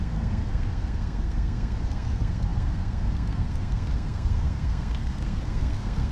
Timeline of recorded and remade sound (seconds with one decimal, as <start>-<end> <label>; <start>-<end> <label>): 0.0-6.1 remade